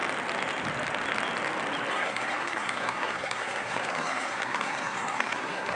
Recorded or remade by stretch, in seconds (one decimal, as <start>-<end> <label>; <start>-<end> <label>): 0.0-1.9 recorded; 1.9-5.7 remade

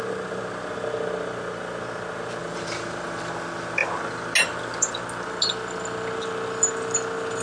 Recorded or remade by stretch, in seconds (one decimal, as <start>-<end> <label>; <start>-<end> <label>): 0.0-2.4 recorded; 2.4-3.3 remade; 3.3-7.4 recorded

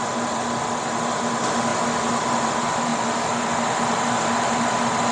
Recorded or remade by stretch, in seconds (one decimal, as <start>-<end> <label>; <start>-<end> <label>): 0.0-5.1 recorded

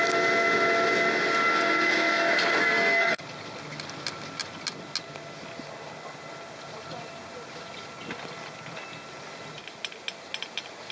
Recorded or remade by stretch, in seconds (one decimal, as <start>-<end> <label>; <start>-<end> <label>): 0.0-2.6 recorded; 2.6-3.2 remade; 3.2-10.9 recorded

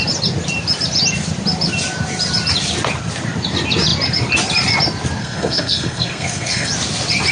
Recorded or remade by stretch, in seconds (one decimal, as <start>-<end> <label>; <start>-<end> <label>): 0.0-5.2 recorded; 5.2-6.7 remade; 6.7-7.3 recorded

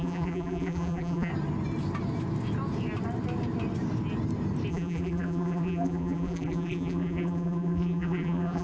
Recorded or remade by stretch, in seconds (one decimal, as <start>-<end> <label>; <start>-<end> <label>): 0.0-1.3 remade; 1.3-4.7 recorded; 4.7-8.6 remade

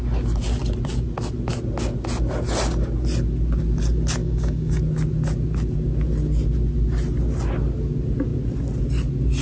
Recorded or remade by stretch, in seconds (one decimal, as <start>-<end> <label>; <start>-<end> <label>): 0.0-4.2 recorded; 4.2-4.8 remade; 4.8-9.4 recorded